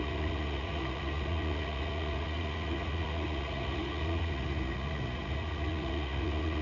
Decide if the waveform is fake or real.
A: fake